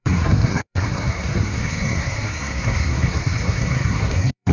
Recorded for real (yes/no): no